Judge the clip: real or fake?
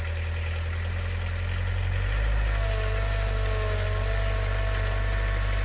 real